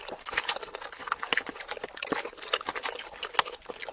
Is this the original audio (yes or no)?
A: yes